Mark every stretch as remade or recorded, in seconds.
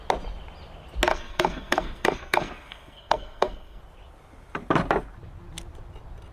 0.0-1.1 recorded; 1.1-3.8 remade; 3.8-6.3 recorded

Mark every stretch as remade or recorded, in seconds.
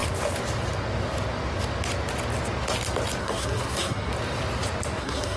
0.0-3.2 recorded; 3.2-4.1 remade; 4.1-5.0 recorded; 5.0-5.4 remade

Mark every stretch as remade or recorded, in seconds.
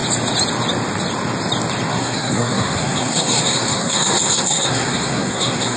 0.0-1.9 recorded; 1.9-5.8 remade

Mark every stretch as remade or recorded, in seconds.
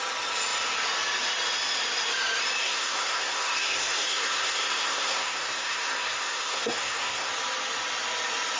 0.0-2.6 recorded; 2.6-7.3 remade; 7.3-8.6 recorded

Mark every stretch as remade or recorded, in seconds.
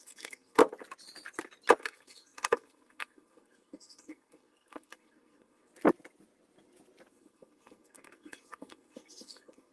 0.0-0.6 remade; 0.6-1.8 recorded; 1.8-5.7 remade; 5.7-7.1 recorded; 7.1-9.7 remade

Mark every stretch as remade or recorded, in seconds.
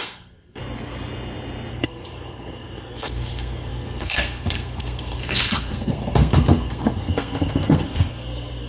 0.0-0.6 remade; 0.6-1.7 recorded; 1.7-8.7 remade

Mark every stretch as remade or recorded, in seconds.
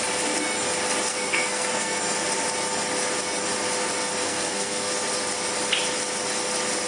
0.0-1.1 recorded; 1.1-2.0 remade; 2.0-4.2 recorded; 4.2-4.9 remade; 4.9-6.9 recorded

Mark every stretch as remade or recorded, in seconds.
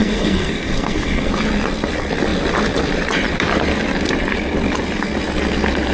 0.0-1.3 remade; 1.3-5.9 recorded